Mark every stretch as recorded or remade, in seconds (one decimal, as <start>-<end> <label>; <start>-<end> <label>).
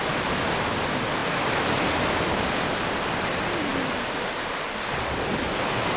0.0-6.0 recorded